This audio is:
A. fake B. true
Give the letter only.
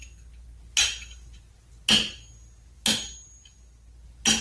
B